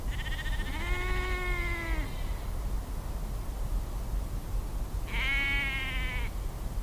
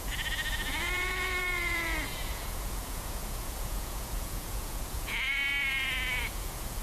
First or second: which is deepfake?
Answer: second